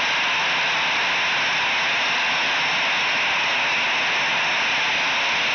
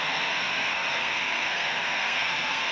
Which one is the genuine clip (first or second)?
first